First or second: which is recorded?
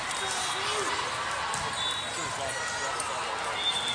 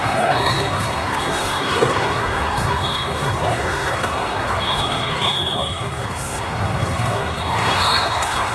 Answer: first